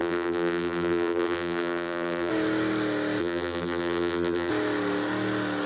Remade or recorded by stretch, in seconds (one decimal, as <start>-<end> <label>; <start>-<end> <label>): 0.0-2.3 remade; 2.3-3.2 recorded; 3.2-4.5 remade; 4.5-5.7 recorded